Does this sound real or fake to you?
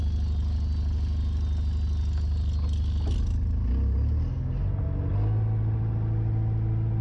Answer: real